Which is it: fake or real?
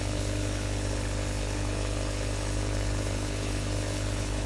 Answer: fake